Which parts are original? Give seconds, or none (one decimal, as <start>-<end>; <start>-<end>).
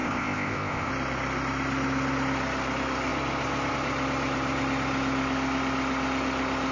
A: 0.9-6.7